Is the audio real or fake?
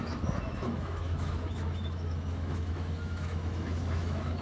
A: fake